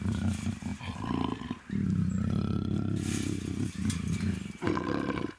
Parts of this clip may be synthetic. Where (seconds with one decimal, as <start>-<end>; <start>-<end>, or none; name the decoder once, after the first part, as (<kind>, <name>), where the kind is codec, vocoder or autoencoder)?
0.0-0.7 (vocoder, BigVGAN v2); 3.9-5.4